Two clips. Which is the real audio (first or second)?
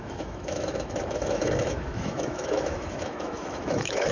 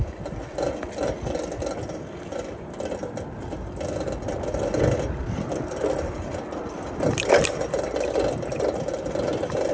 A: second